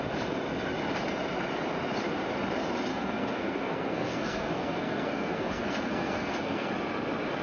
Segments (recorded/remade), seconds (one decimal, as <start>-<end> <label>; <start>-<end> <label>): 0.0-2.9 recorded; 2.9-6.7 remade; 6.7-7.4 recorded